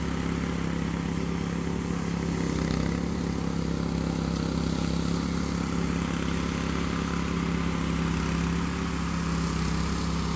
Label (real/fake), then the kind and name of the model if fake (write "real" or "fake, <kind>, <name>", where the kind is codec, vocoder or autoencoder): real